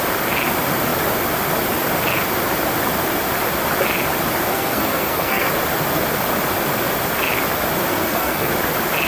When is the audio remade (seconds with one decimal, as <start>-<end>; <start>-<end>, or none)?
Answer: 4.5-5.5; 7.9-8.5